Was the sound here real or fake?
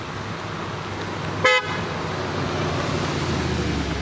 real